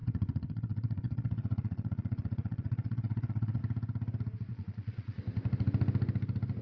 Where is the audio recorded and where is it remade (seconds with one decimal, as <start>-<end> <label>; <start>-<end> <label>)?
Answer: 0.0-3.6 remade; 3.6-4.5 recorded; 4.5-5.2 remade; 5.2-6.6 recorded